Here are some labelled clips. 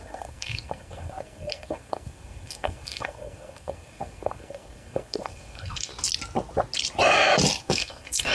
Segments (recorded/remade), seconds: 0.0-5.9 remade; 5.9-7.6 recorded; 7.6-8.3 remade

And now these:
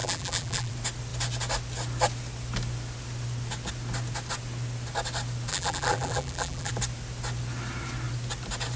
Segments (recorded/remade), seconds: 0.0-0.7 remade; 0.7-5.5 recorded; 5.5-6.7 remade; 6.7-8.8 recorded

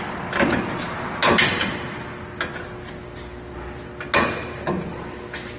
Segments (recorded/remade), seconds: 0.0-5.6 recorded

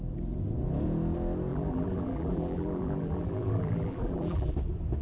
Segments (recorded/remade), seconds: 0.0-1.5 recorded; 1.5-4.5 remade; 4.5-5.0 recorded